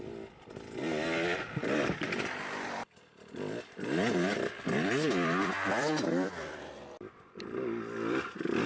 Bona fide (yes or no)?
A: no